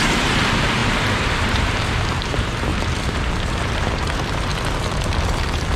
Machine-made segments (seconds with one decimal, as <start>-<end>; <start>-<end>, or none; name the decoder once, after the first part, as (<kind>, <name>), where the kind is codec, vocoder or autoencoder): 0.0-2.7 (vocoder, BigVGAN v2); 3.3-4.5